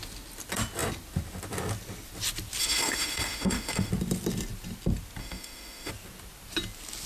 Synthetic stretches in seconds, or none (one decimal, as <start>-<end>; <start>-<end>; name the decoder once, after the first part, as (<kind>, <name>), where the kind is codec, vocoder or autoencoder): 2.6-3.9 (autoencoder, DAC-VAE); 5.2-5.9